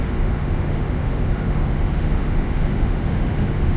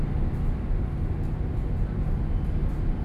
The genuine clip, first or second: second